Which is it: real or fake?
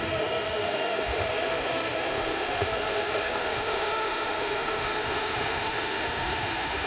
fake